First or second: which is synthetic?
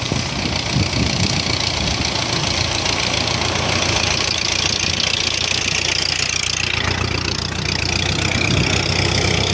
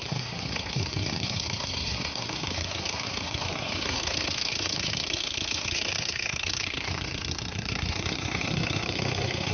second